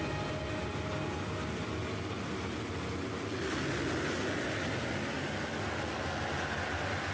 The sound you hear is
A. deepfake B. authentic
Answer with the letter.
B